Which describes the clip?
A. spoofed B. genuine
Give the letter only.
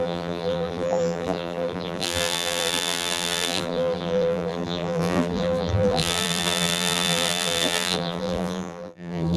A